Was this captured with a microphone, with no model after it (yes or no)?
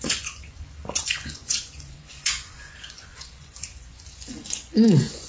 no